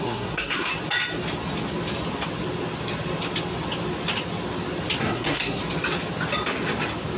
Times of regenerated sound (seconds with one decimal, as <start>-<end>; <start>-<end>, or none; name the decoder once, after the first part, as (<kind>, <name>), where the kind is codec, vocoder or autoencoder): 0.0-0.7 (codec, SNAC); 5.0-5.6